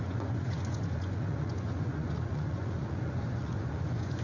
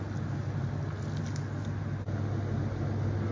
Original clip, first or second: second